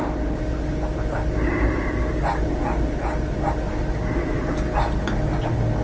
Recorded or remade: recorded